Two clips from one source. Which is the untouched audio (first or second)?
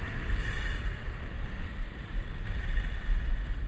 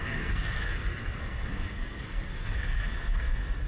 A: first